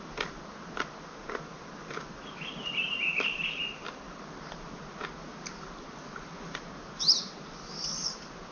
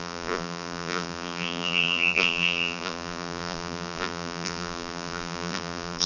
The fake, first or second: second